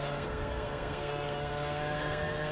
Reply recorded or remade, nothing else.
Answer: remade